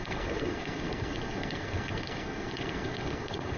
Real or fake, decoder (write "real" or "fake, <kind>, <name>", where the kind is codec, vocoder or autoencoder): fake, codec, SNAC